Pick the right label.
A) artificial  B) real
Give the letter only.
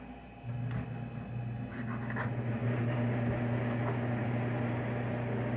B